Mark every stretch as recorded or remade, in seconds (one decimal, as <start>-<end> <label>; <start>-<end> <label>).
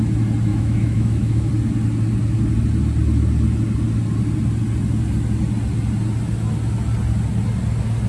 0.0-0.5 recorded; 0.5-1.5 remade; 1.5-8.1 recorded